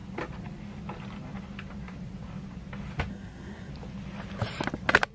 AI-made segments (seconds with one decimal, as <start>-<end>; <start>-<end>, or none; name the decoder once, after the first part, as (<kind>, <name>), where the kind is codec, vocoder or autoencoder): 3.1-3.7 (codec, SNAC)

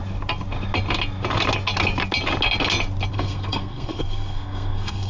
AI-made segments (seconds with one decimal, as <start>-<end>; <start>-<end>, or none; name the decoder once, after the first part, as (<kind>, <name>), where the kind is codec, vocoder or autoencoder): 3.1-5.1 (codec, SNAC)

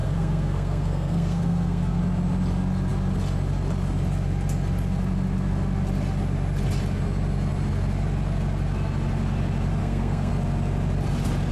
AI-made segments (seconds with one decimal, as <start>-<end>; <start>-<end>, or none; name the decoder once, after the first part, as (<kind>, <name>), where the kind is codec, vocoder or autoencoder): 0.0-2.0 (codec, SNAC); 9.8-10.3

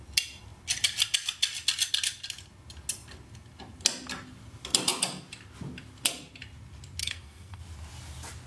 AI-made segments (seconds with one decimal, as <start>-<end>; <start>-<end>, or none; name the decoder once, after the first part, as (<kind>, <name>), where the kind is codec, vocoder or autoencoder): 7.0-7.6 (codec, SNAC)

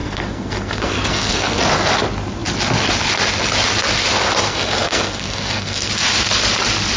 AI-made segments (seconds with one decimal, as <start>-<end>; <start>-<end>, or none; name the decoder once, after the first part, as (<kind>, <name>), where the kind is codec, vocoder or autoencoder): 0.0-1.6 (codec, SNAC); 4.4-5.9